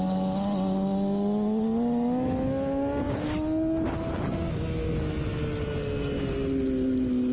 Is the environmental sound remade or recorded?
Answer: recorded